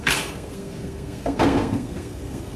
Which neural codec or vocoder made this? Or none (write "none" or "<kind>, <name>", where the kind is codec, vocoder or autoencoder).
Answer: codec, SNAC